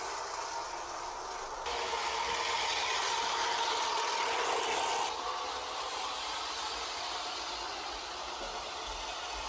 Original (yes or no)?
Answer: yes